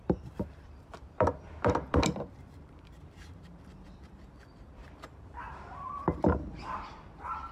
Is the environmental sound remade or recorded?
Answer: remade